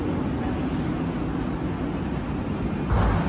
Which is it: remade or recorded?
recorded